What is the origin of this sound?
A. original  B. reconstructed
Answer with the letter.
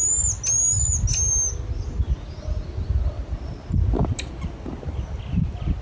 A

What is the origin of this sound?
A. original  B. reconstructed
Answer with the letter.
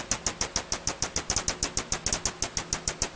A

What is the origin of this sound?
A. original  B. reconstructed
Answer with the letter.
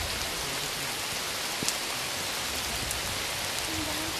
A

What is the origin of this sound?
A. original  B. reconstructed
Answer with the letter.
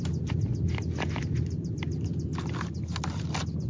A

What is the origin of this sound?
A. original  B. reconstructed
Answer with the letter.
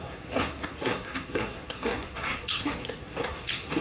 B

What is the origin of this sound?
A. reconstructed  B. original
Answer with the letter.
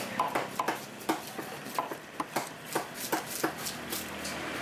B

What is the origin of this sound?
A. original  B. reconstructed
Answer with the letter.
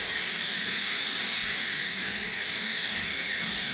B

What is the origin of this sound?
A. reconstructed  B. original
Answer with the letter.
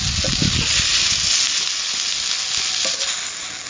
B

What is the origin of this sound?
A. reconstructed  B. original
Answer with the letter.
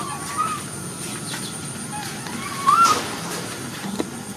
B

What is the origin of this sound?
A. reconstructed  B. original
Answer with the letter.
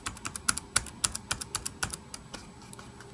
B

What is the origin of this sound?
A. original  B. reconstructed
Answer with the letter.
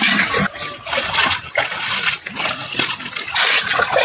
A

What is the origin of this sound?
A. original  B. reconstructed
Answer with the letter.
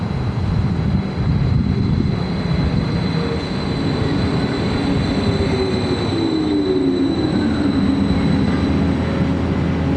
A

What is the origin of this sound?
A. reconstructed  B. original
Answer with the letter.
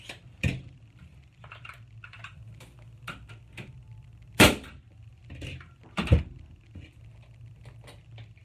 B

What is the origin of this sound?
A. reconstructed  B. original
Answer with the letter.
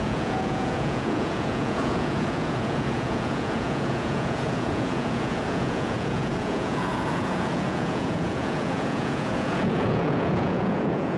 A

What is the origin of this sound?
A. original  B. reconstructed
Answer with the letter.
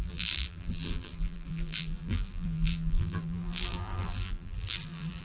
B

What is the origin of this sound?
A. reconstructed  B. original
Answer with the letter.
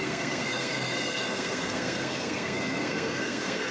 A